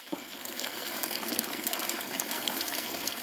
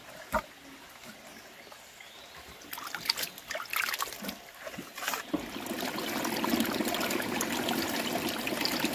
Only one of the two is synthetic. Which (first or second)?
first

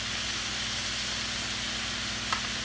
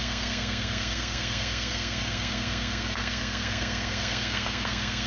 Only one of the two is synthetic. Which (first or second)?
second